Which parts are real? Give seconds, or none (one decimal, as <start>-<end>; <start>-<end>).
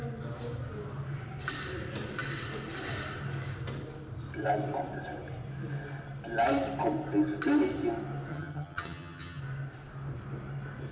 0.0-8.3; 9.4-10.9